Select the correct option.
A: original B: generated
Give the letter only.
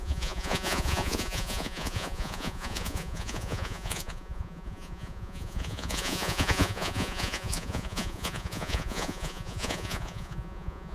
B